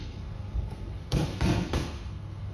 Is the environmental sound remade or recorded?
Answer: remade